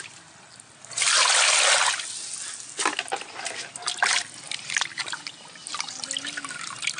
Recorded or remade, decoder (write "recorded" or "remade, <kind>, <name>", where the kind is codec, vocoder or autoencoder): recorded